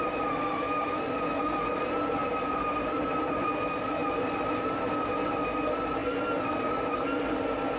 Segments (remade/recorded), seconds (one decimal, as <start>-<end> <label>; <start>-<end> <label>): 0.0-2.2 recorded; 2.2-3.2 remade; 3.2-7.8 recorded